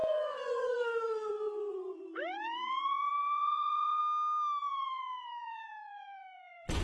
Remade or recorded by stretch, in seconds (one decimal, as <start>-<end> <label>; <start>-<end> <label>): 0.0-4.0 remade; 4.0-4.6 recorded; 4.6-6.8 remade